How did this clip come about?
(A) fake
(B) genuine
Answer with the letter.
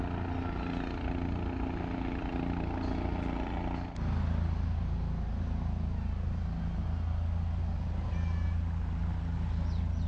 B